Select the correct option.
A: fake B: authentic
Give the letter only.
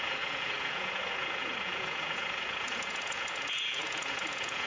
A